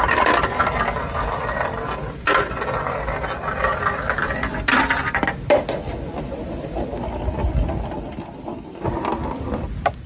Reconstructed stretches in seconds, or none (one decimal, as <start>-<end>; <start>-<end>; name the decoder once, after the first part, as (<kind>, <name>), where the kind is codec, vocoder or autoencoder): none